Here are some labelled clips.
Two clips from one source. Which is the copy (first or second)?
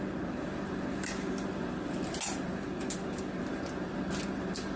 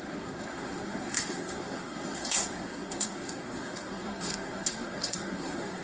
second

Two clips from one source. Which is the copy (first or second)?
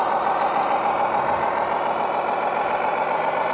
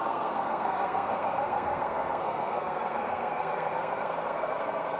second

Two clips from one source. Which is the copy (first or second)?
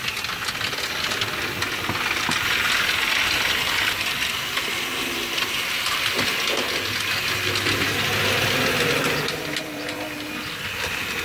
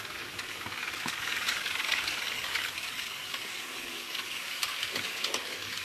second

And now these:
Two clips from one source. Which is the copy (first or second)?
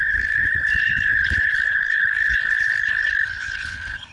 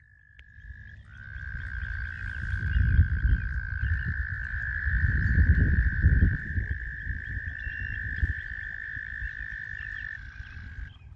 first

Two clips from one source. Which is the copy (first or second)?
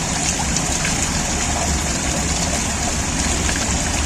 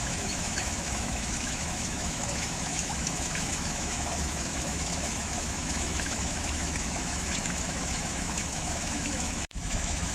second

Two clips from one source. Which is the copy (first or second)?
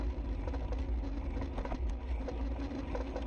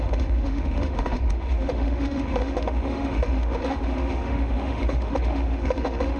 second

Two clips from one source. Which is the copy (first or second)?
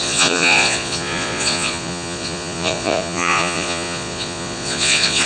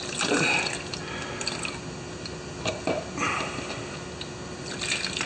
first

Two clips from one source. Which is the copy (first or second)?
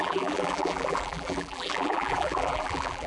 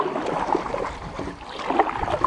first